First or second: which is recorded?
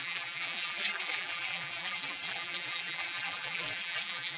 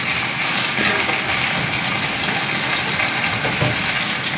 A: second